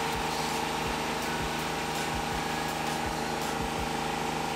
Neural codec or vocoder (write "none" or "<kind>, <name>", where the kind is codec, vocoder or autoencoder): none